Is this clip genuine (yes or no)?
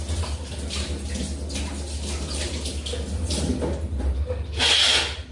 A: yes